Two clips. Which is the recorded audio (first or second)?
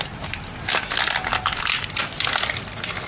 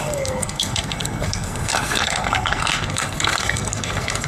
first